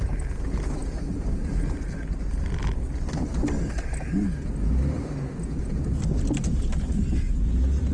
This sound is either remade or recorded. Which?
recorded